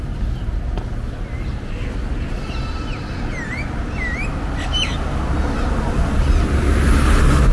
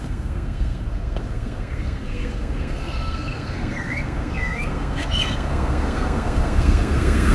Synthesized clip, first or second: second